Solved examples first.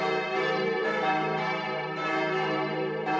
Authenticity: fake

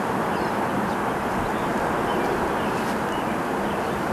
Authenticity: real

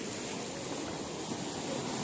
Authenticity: real